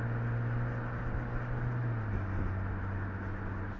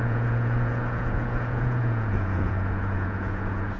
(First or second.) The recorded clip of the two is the first